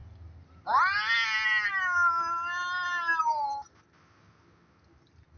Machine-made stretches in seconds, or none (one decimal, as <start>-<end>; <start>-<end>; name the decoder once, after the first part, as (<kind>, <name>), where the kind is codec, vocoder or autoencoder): none